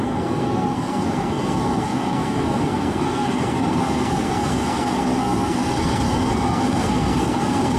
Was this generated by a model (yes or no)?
yes